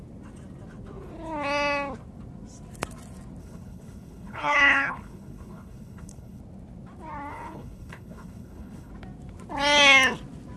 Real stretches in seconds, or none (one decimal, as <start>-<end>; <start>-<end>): 0.0-3.4; 6.4-7.3; 8.9-10.6

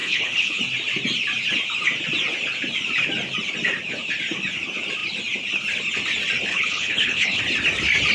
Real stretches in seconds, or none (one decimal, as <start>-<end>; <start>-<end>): 0.6-6.5; 7.4-8.1

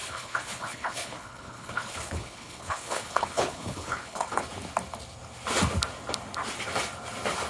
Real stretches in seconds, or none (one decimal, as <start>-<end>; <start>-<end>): 4.4-7.5

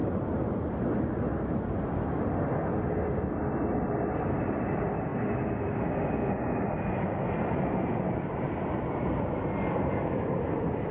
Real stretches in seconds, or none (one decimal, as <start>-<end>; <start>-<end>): 0.0-10.9

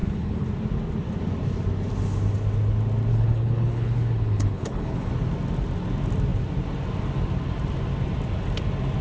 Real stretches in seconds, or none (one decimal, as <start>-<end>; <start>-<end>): 0.5-3.1; 5.1-9.0

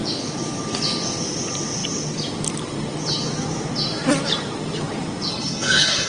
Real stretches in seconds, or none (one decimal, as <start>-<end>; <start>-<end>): 0.0-5.3

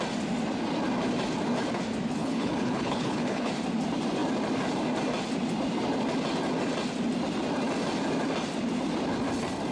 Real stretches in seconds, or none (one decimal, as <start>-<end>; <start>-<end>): 0.0-2.2; 3.5-9.7

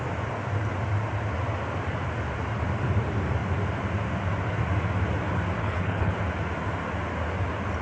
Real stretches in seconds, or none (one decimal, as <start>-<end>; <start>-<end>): 0.0-5.6; 6.1-7.8